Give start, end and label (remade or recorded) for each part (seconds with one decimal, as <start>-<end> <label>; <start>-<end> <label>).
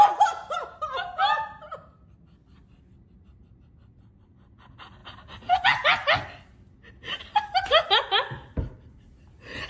0.0-9.7 recorded